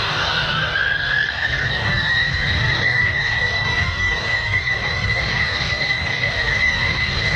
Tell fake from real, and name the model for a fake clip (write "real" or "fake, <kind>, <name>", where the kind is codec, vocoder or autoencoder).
fake, codec, DAC